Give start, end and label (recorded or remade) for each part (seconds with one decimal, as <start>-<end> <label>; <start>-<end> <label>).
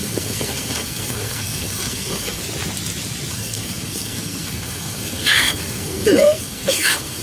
0.0-2.4 remade; 2.4-3.3 recorded; 3.3-7.2 remade